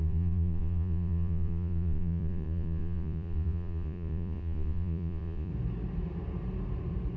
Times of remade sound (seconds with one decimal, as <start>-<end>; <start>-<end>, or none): 0.0-5.5